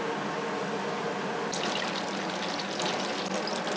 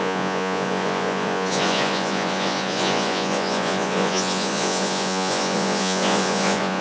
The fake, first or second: second